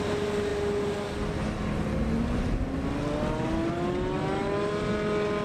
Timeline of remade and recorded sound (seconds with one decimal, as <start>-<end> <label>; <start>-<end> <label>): 0.0-5.4 recorded